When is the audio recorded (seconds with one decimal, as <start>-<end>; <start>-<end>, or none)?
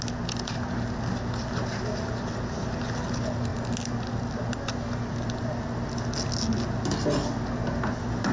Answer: 0.0-8.3